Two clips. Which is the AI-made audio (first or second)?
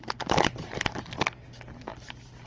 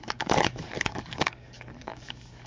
second